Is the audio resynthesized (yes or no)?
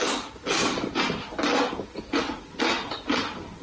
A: no